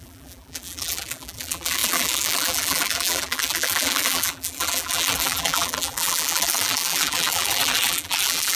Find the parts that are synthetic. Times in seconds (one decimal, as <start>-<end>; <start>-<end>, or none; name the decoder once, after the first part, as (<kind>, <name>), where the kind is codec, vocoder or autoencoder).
0.0-8.5 (vocoder, BigVGAN v2)